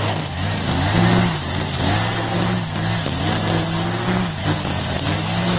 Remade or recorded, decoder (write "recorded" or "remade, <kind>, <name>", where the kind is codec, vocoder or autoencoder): recorded